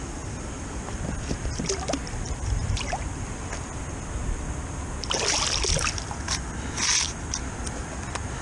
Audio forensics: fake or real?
real